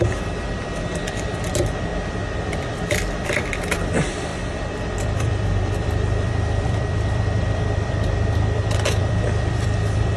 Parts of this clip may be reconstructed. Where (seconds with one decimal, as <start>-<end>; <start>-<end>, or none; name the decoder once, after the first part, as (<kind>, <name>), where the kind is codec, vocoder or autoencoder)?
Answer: 0.0-1.9 (vocoder, BigVGAN v2); 2.5-10.2